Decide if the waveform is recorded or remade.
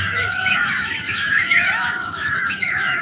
remade